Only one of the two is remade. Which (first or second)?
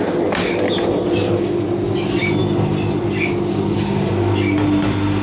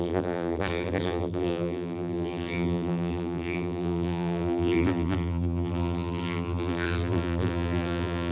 second